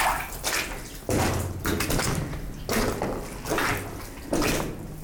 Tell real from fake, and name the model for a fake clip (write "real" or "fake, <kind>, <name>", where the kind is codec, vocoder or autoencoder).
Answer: real